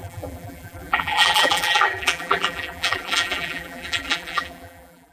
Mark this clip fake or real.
fake